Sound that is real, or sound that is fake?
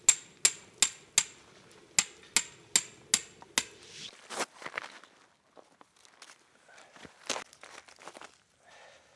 real